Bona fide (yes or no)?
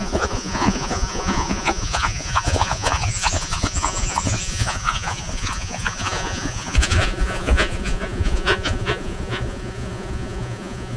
no